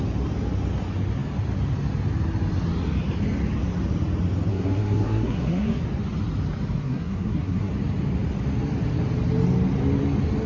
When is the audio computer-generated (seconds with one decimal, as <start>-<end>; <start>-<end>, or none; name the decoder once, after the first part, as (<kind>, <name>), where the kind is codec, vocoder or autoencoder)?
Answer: 4.5-5.8 (codec, SNAC); 6.8-7.7